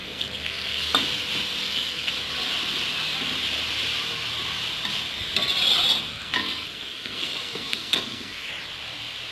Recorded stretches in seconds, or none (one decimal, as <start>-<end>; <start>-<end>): 0.9-1.6; 2.1-6.1; 8.5-9.3